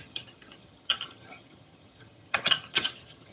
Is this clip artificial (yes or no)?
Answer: yes